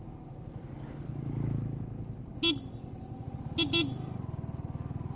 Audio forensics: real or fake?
real